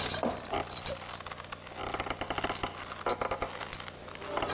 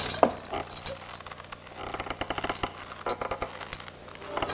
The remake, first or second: first